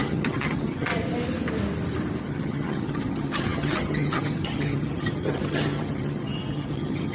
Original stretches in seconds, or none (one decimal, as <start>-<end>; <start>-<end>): 0.9-2.2